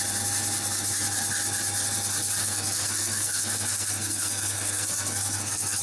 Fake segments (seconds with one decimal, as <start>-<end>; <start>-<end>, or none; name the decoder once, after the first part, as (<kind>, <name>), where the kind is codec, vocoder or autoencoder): 2.4-5.8 (codec, SNAC)